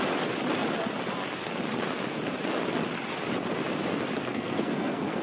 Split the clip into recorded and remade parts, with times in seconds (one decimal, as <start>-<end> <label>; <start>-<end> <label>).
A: 0.0-4.2 recorded; 4.2-5.2 remade